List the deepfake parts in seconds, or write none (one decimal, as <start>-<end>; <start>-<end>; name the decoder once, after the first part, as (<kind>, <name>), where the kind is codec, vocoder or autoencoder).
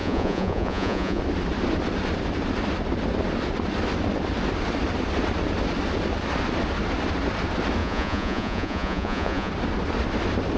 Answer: 0.0-1.2 (vocoder, Vocos); 7.8-9.5